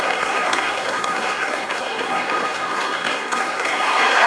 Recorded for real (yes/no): no